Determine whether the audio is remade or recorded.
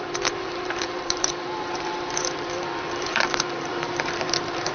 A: remade